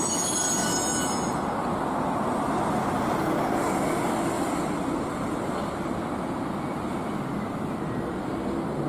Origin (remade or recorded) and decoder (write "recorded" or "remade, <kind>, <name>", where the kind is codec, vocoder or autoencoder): recorded